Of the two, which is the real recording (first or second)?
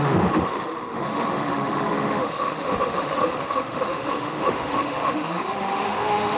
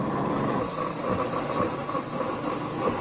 second